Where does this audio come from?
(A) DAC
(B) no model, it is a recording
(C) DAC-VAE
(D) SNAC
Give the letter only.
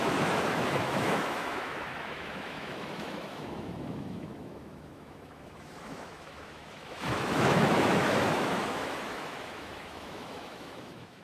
C